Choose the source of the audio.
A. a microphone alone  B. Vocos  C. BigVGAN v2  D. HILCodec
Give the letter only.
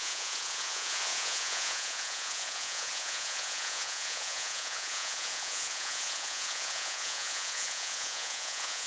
B